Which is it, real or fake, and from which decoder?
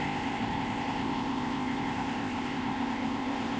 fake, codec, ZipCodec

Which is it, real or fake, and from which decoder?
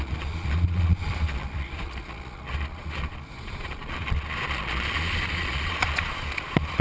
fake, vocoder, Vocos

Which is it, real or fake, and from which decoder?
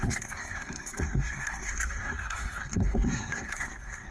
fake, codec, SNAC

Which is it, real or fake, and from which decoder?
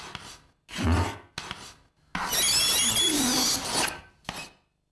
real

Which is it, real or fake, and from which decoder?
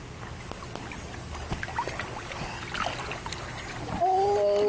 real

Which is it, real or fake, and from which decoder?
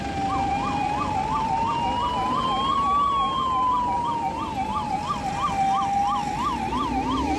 real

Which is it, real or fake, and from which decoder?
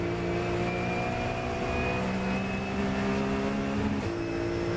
real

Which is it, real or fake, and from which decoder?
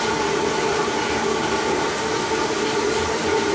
real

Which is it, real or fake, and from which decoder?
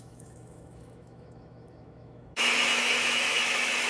fake, autoencoder, DAC-VAE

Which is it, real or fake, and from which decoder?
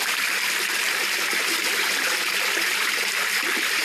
fake, vocoder, BigVGAN v2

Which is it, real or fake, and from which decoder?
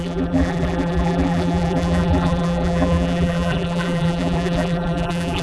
fake, vocoder, BigVGAN v2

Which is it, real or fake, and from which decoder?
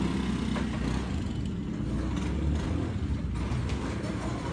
real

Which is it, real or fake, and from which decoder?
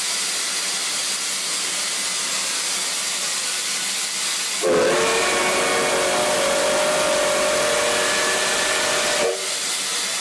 real